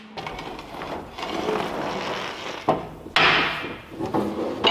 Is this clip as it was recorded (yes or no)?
yes